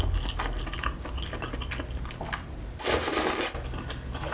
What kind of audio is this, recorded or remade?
recorded